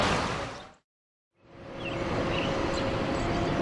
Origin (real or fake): real